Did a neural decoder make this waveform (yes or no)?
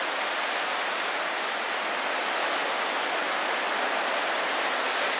no